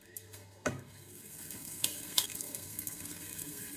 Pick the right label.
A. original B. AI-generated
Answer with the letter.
B